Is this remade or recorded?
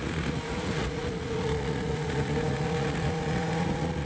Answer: remade